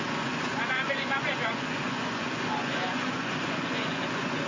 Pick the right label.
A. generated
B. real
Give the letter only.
A